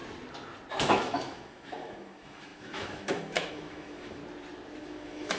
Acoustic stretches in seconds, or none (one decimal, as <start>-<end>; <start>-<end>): 0.0-0.7; 4.2-4.8